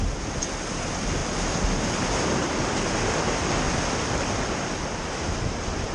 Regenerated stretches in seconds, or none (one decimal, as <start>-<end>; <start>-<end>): none